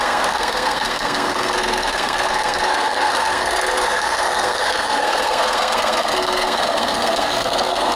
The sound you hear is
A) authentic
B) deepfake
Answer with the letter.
B